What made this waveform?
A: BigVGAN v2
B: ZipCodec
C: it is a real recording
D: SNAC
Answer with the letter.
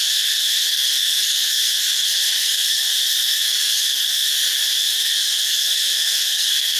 D